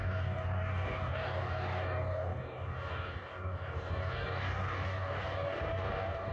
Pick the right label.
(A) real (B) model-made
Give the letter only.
B